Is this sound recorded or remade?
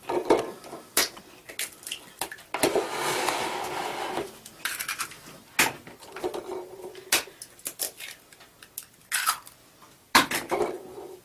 recorded